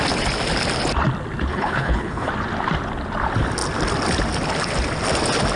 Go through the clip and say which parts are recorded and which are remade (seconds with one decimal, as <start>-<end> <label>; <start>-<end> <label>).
0.0-1.5 recorded; 1.5-2.3 remade; 2.3-5.6 recorded